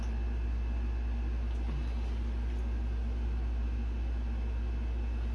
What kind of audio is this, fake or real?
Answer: real